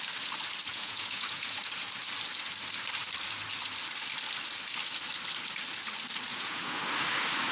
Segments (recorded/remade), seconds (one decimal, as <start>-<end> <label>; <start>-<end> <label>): 0.0-0.7 recorded; 0.7-1.6 remade; 1.6-6.3 recorded; 6.3-6.8 remade; 6.8-7.5 recorded